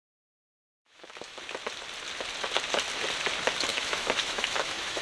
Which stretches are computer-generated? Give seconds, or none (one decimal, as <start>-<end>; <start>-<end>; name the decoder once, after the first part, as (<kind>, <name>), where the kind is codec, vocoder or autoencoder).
0.8-1.4 (autoencoder, DAC-VAE); 3.7-5.0